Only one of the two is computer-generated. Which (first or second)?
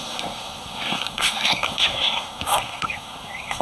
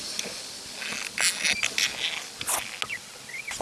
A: first